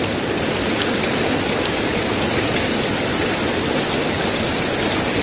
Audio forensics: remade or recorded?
recorded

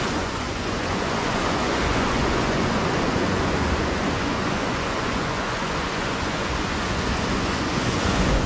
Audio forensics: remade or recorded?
remade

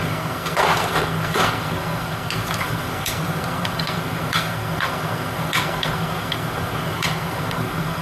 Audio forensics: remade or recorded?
remade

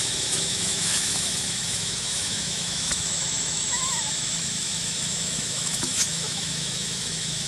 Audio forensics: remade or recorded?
remade